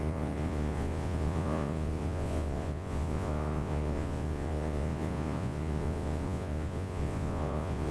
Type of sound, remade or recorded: remade